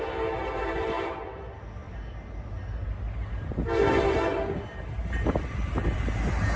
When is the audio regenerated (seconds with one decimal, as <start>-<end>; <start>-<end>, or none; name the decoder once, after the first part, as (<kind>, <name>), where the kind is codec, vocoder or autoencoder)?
none